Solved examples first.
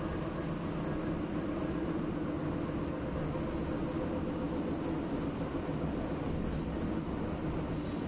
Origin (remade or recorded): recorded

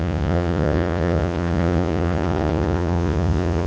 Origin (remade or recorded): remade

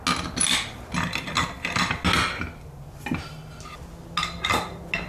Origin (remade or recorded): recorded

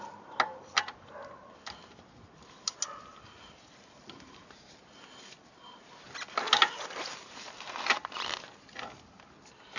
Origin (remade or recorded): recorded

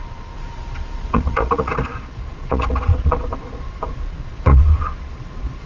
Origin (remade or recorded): remade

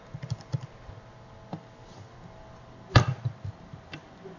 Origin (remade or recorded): recorded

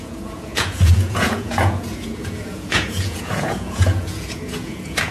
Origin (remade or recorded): remade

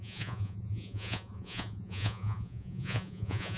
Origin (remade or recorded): remade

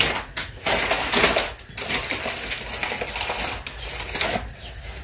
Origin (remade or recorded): recorded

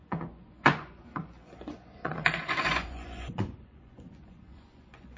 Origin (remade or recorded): remade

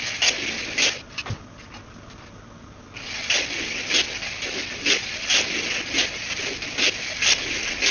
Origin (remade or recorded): recorded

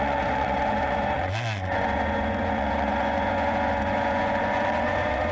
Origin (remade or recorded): remade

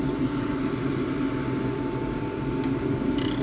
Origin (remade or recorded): recorded